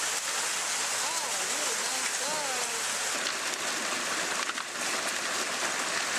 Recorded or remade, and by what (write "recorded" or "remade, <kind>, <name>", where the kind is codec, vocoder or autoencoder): recorded